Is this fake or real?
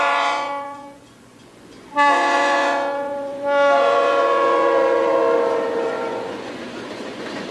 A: fake